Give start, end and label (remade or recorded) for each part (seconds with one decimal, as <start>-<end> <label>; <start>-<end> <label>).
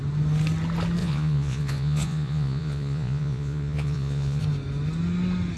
0.0-1.0 recorded; 1.0-4.4 remade; 4.4-5.6 recorded